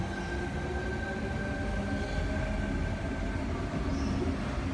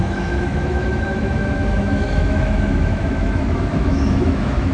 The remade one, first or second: second